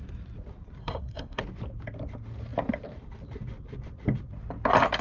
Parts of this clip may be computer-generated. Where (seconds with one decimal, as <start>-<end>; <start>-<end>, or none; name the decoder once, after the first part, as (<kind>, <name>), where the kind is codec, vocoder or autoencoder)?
0.8-1.4 (codec, SNAC)